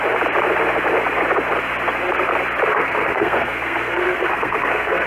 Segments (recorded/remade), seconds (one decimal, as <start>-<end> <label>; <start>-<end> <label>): 0.0-2.7 recorded; 2.7-5.1 remade